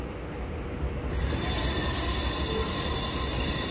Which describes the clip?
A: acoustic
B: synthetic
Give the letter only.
A